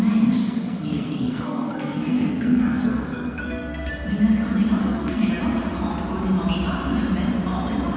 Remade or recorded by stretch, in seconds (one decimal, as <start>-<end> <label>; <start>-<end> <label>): 0.0-0.4 recorded; 0.4-3.9 remade; 3.9-4.8 recorded; 4.8-5.3 remade; 5.3-8.0 recorded